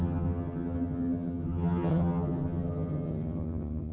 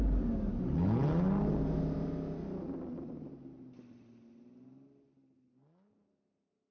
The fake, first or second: first